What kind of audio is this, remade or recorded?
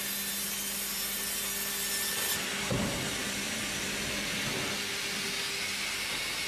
recorded